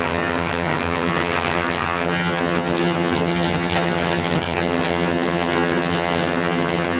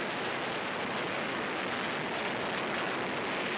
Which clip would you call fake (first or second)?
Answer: first